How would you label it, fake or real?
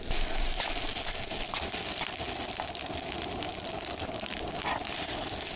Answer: real